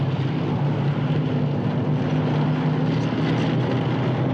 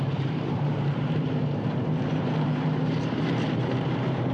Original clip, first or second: first